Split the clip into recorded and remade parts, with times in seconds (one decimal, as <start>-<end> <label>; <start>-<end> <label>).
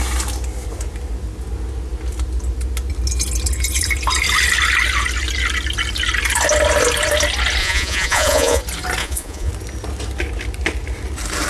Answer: 0.0-7.6 recorded; 7.6-8.6 remade; 8.6-9.0 recorded; 9.0-9.5 remade; 9.5-11.5 recorded